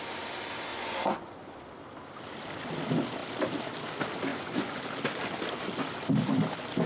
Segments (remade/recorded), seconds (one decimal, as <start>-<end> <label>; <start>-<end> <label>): 0.0-0.7 recorded; 0.7-1.6 remade; 1.6-4.3 recorded; 4.3-4.8 remade; 4.8-6.9 recorded